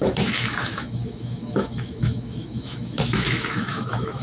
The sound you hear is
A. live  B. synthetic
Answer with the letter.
B